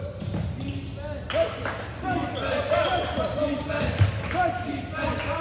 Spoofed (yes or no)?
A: no